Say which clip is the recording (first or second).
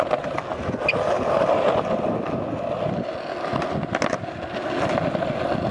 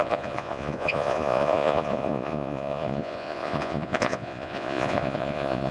first